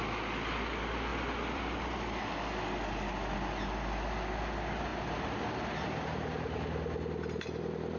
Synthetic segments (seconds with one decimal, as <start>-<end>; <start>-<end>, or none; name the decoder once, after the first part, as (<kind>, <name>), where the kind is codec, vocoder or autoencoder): 1.1-1.8 (vocoder, BigVGAN v2)